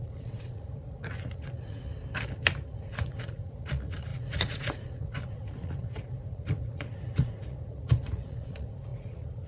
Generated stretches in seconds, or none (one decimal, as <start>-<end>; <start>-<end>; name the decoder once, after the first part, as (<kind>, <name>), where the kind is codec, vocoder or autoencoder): 0.0-1.9 (vocoder, Vocos); 2.7-9.5